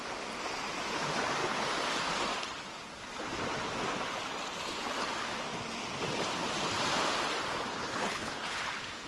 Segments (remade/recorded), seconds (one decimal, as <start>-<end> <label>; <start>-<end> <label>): 0.0-7.7 recorded; 7.7-8.6 remade; 8.6-9.1 recorded